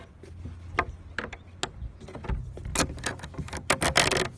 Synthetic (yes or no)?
no